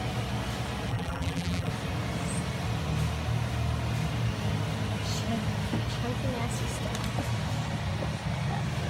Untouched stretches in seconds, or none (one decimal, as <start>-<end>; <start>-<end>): 0.0-0.9; 1.7-8.9